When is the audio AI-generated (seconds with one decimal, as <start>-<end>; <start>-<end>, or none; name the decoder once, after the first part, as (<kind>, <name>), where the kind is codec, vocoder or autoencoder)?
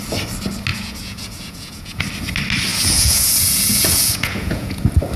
0.7-2.0 (vocoder, Vocos); 2.7-4.8